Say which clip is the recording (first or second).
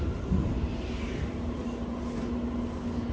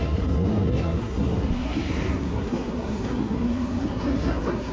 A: first